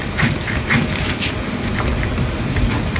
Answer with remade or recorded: recorded